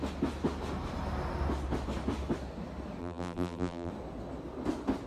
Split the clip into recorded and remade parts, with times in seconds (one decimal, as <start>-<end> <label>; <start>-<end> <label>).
0.0-3.0 recorded; 3.0-3.9 remade; 3.9-5.1 recorded